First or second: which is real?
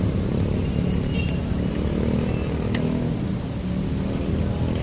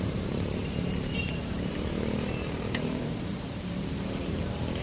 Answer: first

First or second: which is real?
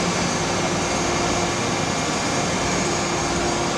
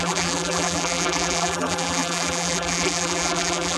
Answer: first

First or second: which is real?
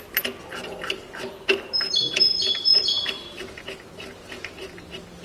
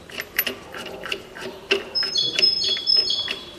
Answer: first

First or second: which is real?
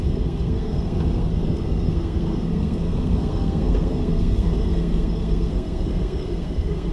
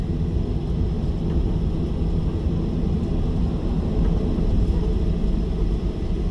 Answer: second